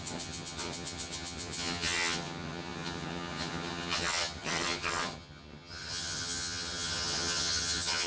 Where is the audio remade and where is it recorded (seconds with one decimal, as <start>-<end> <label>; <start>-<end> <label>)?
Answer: 0.0-8.1 remade